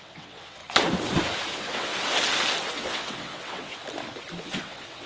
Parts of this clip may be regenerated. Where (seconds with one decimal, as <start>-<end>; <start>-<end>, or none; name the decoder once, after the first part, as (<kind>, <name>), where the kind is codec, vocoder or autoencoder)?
0.0-0.6 (vocoder, WaveNeXt); 1.5-1.9; 2.7-3.8; 4.4-5.1